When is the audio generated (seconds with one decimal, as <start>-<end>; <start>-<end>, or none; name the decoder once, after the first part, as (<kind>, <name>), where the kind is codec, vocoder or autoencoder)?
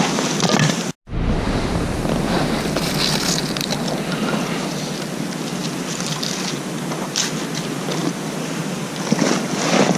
none